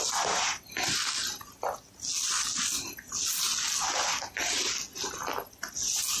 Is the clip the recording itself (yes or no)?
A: yes